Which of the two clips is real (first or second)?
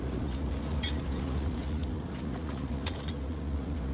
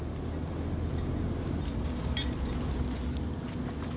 second